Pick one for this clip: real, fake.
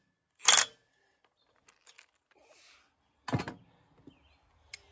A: real